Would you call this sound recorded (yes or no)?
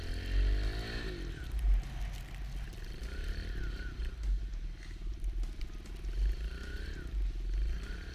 yes